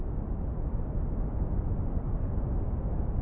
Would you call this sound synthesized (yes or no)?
no